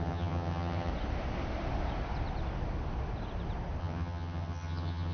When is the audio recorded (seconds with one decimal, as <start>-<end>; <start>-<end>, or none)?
0.9-3.8